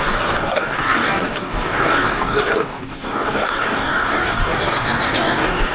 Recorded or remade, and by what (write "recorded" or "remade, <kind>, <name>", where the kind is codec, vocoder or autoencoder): remade, codec, DAC